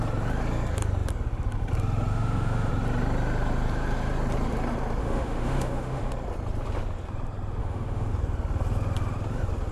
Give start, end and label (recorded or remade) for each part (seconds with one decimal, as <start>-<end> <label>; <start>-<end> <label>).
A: 0.0-2.1 recorded; 2.1-2.7 remade; 2.7-5.0 recorded; 5.0-6.1 remade; 6.1-7.6 recorded; 7.6-8.1 remade; 8.1-9.7 recorded